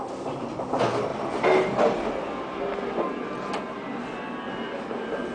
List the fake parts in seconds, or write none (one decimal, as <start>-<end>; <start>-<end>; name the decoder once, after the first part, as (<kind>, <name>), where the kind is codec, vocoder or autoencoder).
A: none